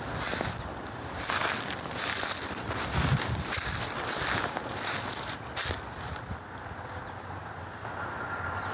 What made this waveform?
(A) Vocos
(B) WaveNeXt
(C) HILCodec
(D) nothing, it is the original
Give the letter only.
D